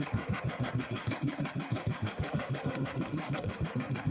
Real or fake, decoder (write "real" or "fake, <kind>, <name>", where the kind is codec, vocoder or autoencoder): fake, codec, SNAC